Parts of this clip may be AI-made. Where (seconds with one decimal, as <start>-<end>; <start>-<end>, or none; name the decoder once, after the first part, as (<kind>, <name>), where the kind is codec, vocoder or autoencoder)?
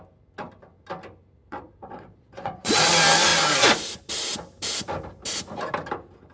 1.4-2.8 (vocoder, Vocos)